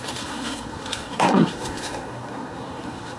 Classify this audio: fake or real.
fake